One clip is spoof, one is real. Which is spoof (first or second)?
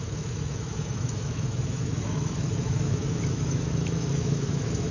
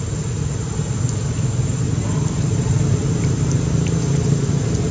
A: first